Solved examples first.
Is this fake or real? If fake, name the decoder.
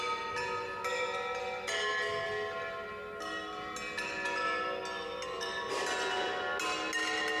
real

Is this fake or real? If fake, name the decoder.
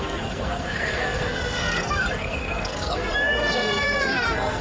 fake, codec, SNAC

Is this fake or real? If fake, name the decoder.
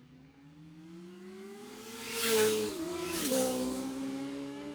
fake, codec, DAC